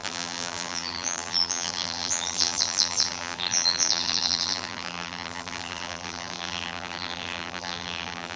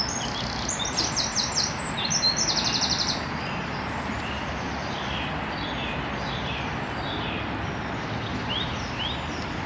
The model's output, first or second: first